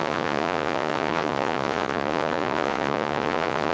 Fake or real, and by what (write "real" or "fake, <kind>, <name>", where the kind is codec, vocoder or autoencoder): fake, vocoder, Vocos